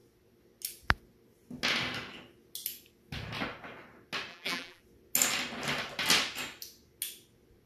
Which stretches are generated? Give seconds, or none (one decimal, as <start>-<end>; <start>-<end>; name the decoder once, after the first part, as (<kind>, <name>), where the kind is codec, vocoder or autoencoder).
4.3-4.8 (vocoder, BigVGAN v2)